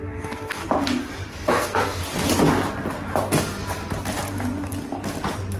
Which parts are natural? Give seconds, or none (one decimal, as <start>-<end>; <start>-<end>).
0.6-1.3; 2.0-5.6